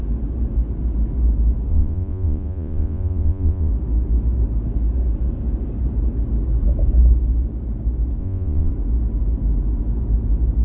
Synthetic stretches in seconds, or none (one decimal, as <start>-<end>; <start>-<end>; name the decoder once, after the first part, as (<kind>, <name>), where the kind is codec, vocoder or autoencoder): 1.7-3.7 (vocoder, Vocos); 8.2-8.7